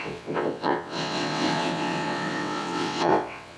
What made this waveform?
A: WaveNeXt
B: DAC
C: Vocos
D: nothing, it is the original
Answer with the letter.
A